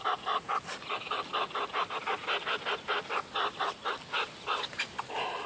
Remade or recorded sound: recorded